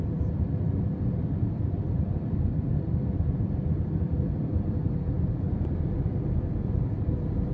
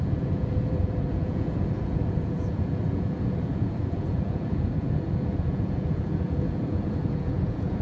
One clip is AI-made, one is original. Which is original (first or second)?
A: first